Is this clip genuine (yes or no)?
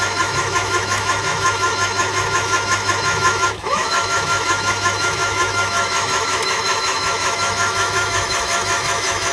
no